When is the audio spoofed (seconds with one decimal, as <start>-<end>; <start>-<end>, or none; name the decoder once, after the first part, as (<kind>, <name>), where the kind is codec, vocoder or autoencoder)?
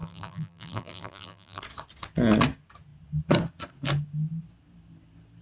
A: 0.0-1.6 (vocoder, BigVGAN v2)